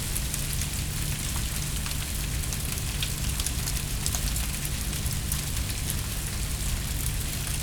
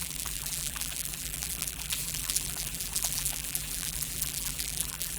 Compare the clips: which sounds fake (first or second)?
second